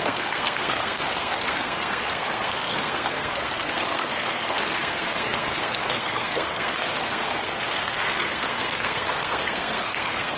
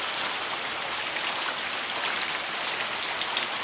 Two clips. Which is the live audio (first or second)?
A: second